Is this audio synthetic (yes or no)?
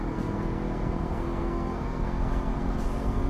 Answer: yes